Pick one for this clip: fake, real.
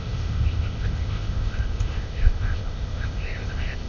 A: fake